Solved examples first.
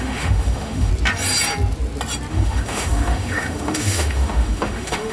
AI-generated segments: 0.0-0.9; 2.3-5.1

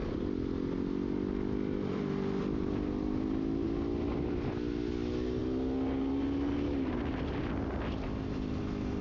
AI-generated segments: none

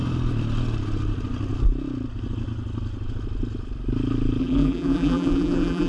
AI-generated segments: 4.4-5.9

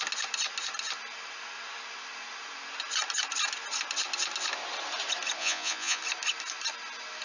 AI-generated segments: 5.4-6.0

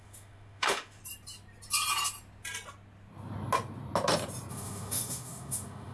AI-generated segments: 0.0-1.0; 4.5-5.9